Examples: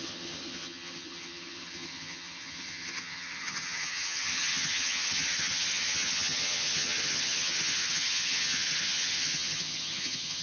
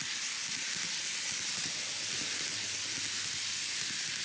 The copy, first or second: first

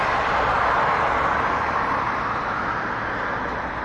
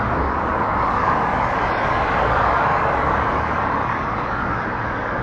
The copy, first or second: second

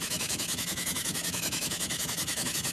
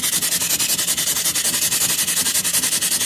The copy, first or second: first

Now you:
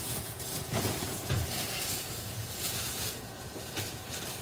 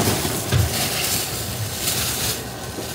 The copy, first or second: first